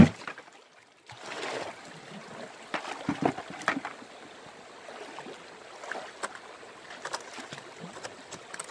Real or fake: real